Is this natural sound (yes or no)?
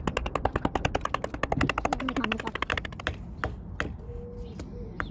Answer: yes